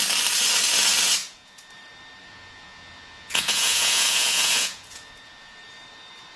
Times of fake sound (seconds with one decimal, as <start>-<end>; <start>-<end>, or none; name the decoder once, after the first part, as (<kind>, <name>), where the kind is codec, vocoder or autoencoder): 1.2-1.7 (vocoder, Vocos); 2.2-5.6